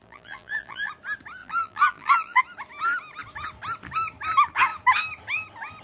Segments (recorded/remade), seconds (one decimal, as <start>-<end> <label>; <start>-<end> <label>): 0.0-0.9 remade; 0.9-1.4 recorded; 1.4-2.4 remade; 2.4-5.8 recorded